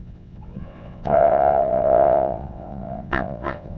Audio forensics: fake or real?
fake